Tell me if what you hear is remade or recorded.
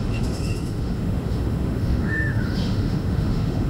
remade